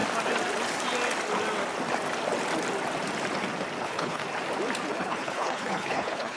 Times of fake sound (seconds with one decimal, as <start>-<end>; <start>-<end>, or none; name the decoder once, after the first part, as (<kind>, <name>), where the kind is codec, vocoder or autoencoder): 3.8-4.2 (codec, HILCodec); 4.9-6.4